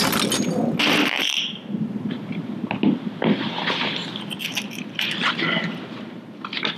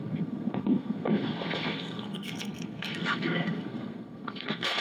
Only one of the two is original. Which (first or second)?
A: first